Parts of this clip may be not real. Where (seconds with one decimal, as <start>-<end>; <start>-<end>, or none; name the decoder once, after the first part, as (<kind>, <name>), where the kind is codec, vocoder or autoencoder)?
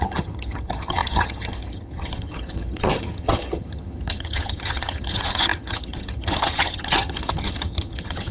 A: 0.0-8.3 (vocoder, HiFi-GAN)